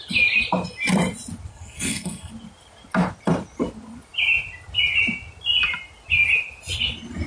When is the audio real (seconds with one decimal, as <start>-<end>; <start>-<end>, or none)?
0.0-1.5; 2.3-7.3